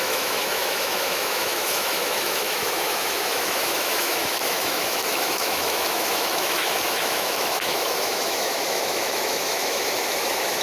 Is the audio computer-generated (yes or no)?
yes